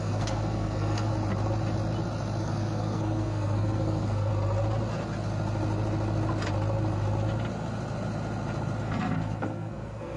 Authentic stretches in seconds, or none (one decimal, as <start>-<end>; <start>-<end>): 1.1-2.4; 4.3-8.8